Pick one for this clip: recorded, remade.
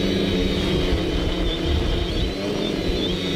recorded